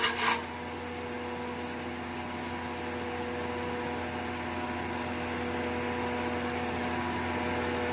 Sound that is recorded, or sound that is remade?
recorded